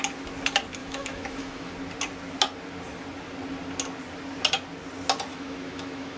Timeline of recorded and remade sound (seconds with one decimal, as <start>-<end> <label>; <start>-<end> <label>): 0.0-0.8 recorded; 0.8-1.7 remade; 1.7-5.3 recorded; 5.3-6.2 remade